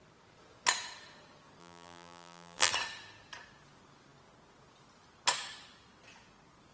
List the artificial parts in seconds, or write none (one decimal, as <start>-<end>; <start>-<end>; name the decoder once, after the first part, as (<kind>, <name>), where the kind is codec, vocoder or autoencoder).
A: 1.6-2.7 (vocoder, BigVGAN v2)